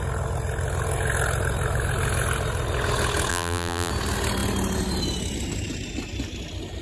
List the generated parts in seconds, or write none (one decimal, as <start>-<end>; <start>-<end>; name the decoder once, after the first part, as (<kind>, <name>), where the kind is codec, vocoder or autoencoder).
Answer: 3.3-3.9 (vocoder, BigVGAN v2)